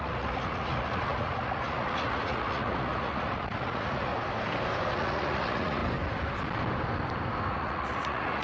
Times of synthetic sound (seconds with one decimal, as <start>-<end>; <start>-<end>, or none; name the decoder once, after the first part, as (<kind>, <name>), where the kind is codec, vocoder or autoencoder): 0.0-4.1 (vocoder, Vocos); 4.9-5.8; 7.5-8.4